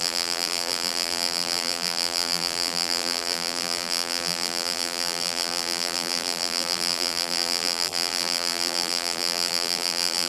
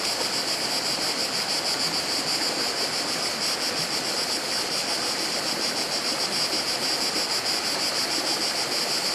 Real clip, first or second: second